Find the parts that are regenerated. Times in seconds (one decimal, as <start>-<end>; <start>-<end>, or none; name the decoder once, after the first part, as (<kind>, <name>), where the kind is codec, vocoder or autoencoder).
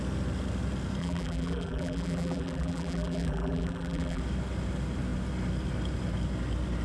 1.0-4.2 (vocoder, BigVGAN v2)